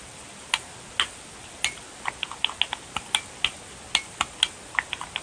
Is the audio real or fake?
real